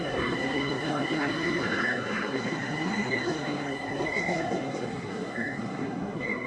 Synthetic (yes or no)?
yes